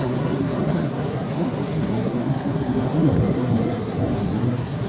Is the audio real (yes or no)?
no